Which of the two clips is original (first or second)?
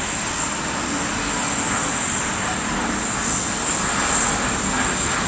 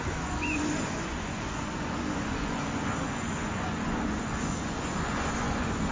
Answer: first